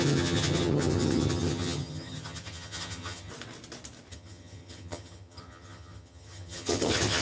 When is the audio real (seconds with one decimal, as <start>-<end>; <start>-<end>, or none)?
3.3-4.1